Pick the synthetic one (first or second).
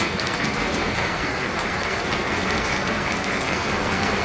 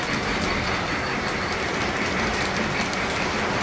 first